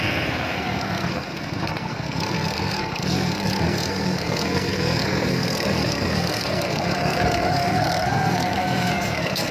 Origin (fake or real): fake